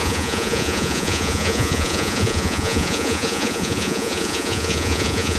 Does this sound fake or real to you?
fake